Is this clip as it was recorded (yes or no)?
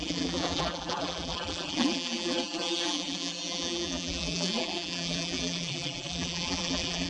no